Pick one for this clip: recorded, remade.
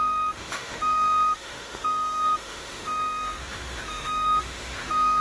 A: remade